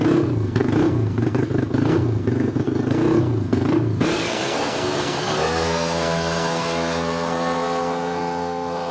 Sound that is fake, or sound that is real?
fake